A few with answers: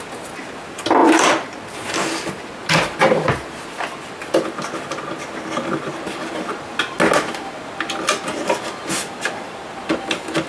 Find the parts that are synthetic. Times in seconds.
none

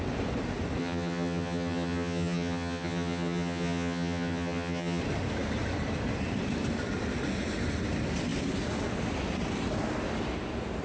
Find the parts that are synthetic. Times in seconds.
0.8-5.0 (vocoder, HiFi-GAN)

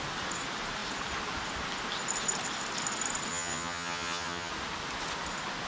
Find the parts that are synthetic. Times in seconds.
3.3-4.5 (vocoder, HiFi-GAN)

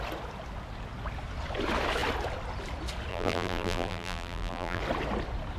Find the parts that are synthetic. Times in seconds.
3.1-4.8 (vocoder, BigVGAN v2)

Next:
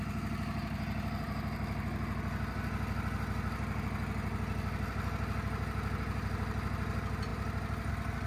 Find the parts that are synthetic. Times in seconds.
none

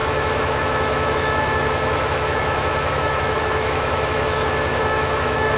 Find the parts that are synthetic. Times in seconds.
0.0-5.6 (autoencoder, DAC-VAE)

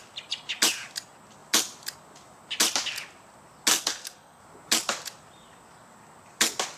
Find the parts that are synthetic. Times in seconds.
3.7-4.4 (codec, SNAC)

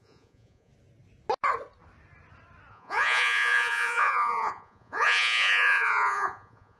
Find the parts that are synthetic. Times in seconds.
0.0-0.7 (vocoder, Vocos); 2.7-6.8